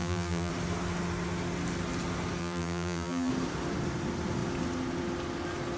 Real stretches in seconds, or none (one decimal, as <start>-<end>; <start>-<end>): 0.5-2.4; 3.3-5.8